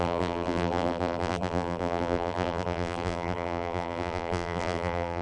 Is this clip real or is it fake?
fake